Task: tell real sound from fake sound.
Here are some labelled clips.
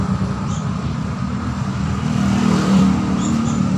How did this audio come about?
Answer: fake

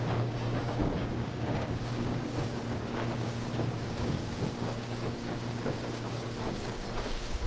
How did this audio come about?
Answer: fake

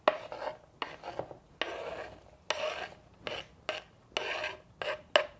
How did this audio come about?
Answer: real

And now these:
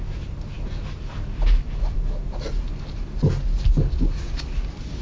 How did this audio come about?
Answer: real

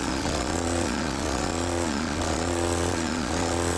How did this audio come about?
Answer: fake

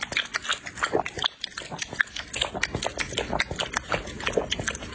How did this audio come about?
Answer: real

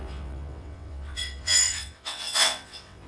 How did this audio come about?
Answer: fake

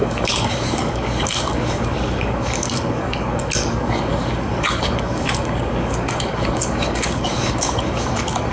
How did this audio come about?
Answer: fake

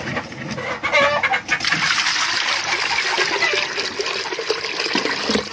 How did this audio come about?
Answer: real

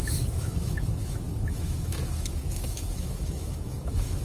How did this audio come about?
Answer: fake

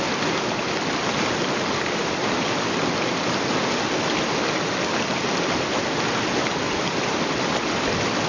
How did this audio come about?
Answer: real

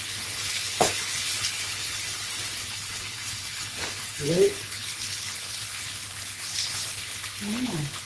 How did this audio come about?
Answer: fake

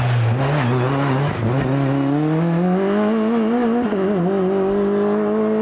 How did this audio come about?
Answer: real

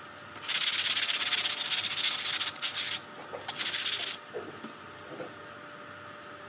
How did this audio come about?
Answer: real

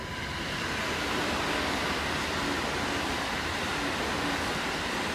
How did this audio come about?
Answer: real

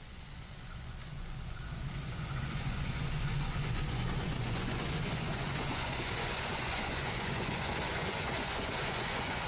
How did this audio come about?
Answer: fake